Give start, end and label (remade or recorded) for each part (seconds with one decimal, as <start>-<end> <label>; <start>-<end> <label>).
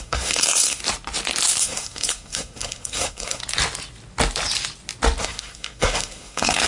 0.0-0.8 remade; 0.8-1.6 recorded; 1.6-3.4 remade; 3.4-5.2 recorded; 5.2-6.7 remade